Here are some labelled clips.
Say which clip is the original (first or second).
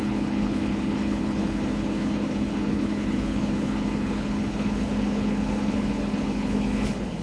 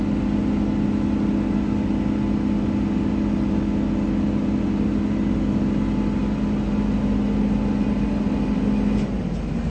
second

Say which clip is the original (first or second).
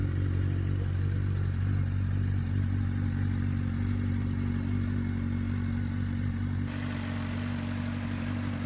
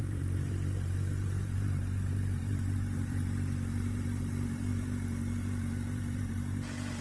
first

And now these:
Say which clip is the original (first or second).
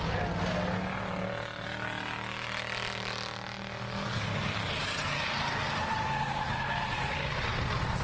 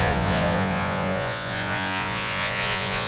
first